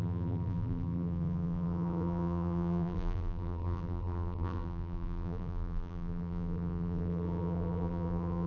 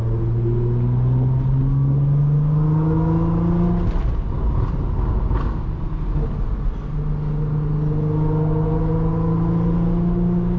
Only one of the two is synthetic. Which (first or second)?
first